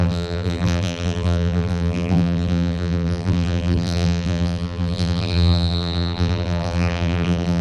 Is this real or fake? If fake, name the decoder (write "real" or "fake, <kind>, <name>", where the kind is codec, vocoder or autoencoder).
fake, vocoder, BigVGAN v2